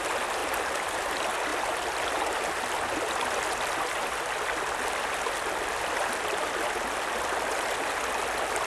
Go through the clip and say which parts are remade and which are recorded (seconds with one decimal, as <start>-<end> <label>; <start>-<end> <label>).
0.0-0.4 recorded; 0.4-1.0 remade; 1.0-8.7 recorded